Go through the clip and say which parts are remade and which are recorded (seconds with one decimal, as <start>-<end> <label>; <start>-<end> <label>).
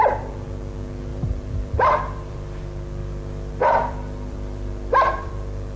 0.0-1.1 recorded; 1.1-2.6 remade; 2.6-3.0 recorded; 3.0-5.3 remade; 5.3-5.8 recorded